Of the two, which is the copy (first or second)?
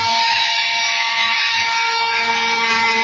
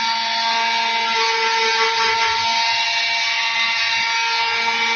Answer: first